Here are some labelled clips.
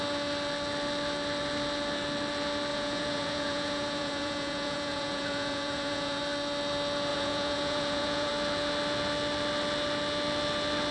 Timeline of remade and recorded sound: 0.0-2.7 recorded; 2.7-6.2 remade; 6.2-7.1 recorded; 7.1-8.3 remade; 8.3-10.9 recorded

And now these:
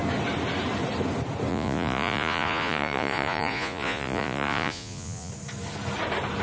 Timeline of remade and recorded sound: 0.0-1.5 recorded; 1.5-5.3 remade; 5.3-6.4 recorded

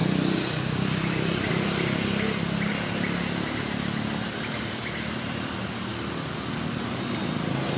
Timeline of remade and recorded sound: 0.0-7.8 recorded

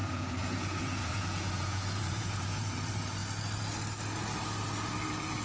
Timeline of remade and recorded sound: 0.0-2.8 remade; 2.8-5.4 recorded

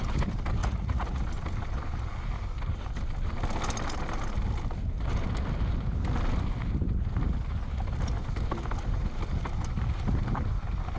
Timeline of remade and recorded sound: 0.0-0.6 recorded; 0.6-1.2 remade; 1.2-11.0 recorded